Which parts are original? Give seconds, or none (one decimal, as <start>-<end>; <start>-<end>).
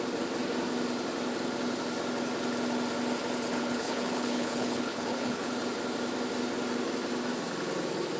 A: 0.0-3.5; 5.5-8.2